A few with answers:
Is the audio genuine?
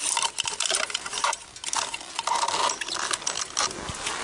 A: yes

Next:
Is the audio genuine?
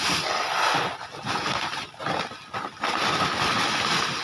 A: yes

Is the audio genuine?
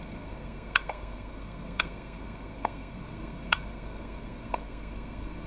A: no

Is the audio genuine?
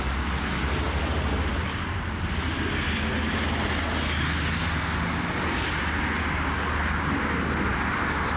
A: yes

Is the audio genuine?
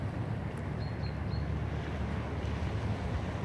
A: yes